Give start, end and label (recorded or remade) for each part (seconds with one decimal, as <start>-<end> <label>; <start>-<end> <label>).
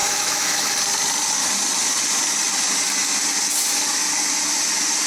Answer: 0.0-0.7 remade; 0.7-5.1 recorded